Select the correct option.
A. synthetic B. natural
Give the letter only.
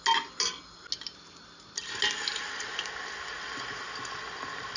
B